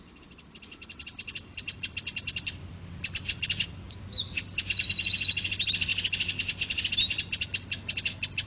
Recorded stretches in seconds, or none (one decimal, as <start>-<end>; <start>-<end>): 0.0-8.5